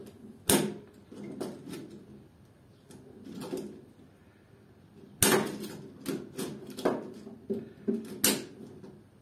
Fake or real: real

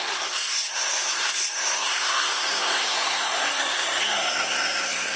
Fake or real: fake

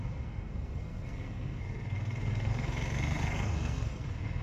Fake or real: fake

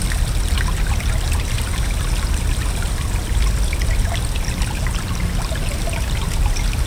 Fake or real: real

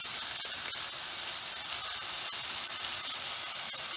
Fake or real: real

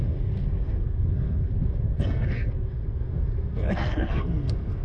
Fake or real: fake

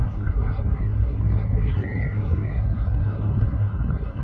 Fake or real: fake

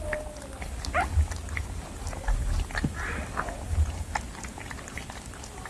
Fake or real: real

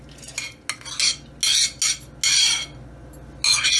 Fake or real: real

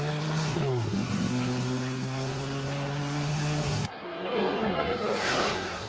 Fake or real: fake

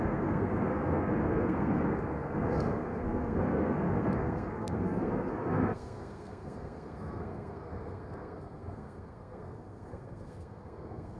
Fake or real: fake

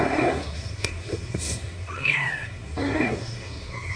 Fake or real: fake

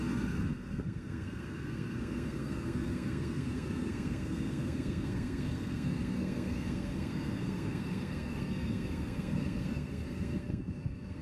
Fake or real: fake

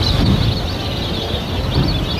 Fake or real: real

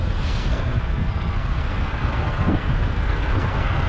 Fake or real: fake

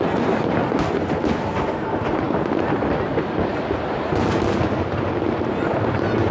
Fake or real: real